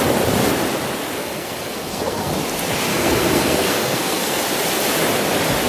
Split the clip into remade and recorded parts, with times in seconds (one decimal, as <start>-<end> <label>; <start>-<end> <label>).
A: 0.0-1.2 recorded; 1.2-2.3 remade; 2.3-2.9 recorded; 2.9-4.4 remade; 4.4-5.7 recorded